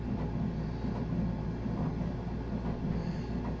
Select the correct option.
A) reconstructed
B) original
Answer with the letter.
B